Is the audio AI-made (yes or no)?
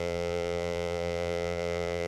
yes